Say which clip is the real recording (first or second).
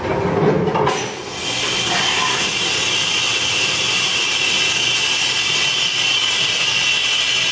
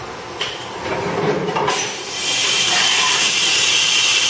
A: first